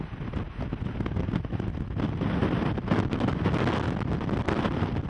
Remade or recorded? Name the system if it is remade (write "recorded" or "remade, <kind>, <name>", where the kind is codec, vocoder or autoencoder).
recorded